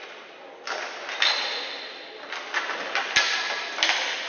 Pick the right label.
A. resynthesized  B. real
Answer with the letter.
B